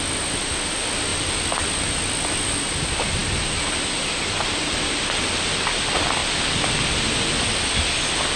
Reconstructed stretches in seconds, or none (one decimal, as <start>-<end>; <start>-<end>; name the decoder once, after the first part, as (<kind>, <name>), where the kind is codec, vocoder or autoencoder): none